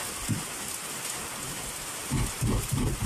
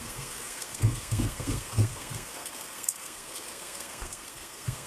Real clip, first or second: first